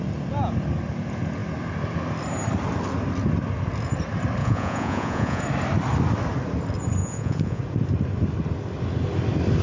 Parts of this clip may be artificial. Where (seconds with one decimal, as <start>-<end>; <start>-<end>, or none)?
4.4-5.4; 7.0-7.6